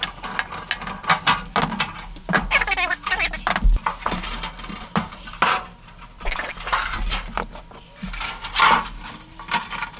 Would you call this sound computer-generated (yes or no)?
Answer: no